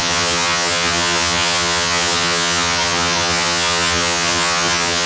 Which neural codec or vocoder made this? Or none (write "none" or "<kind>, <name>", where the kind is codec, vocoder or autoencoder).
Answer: vocoder, HiFi-GAN